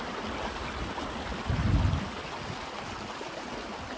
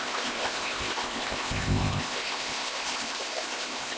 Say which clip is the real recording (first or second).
first